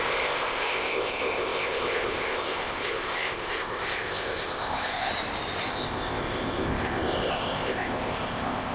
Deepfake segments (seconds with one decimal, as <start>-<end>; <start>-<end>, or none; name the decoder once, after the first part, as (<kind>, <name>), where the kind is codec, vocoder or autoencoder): 0.0-5.1 (codec, ZipCodec); 5.7-8.7